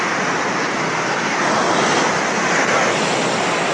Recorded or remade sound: recorded